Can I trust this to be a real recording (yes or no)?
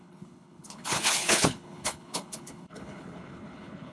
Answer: no